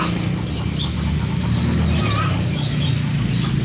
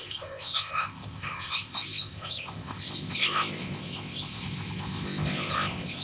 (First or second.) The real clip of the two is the first